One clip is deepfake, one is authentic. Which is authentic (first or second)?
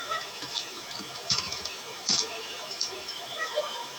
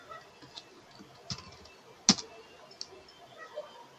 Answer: second